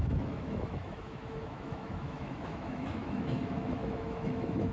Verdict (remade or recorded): remade